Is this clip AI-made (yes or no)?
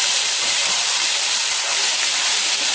yes